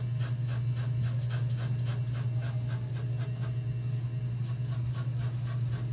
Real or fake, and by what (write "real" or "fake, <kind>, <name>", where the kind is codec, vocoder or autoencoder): real